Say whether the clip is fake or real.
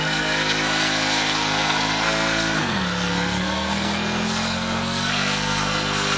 fake